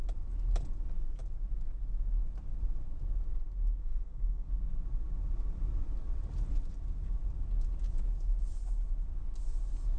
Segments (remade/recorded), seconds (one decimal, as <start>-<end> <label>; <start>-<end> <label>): 0.0-3.8 recorded; 3.8-4.5 remade; 4.5-10.0 recorded